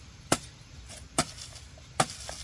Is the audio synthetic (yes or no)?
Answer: no